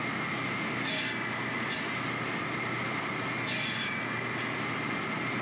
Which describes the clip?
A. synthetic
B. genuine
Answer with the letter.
B